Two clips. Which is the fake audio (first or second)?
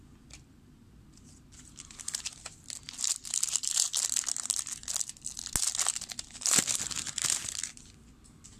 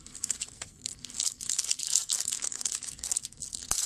second